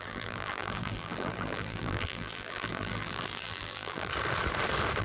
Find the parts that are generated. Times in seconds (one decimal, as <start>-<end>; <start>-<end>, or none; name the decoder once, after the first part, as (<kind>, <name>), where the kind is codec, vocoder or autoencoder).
0.0-4.1 (vocoder, BigVGAN v2)